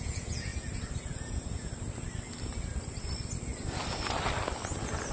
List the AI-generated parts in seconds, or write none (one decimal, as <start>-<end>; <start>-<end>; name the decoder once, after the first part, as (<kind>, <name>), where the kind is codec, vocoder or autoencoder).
0.0-0.5 (vocoder, Vocos); 1.0-1.7